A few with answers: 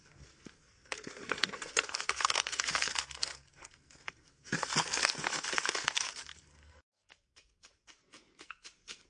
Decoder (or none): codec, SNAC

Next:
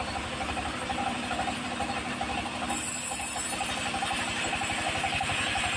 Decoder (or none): none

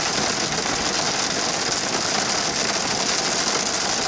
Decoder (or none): none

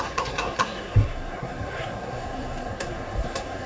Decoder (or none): codec, SNAC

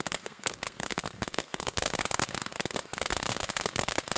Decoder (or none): codec, SNAC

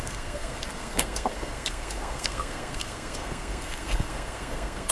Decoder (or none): codec, SNAC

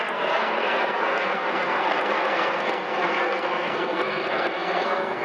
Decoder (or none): codec, SNAC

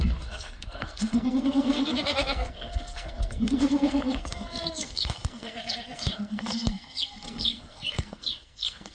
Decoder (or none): codec, SNAC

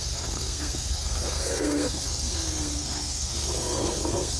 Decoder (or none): codec, SNAC